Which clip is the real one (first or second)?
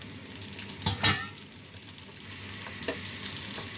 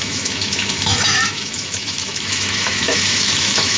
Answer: first